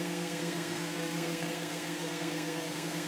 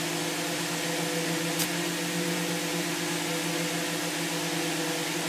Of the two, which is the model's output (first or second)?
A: first